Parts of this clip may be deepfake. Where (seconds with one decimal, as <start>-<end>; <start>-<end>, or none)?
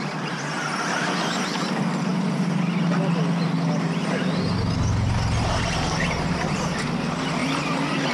none